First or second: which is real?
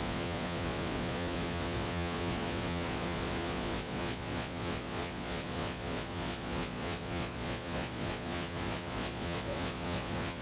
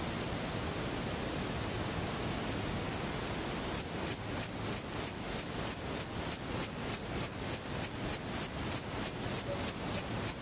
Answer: second